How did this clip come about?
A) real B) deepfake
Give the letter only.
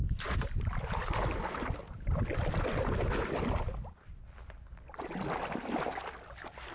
A